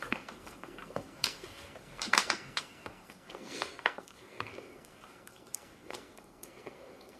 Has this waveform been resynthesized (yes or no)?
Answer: yes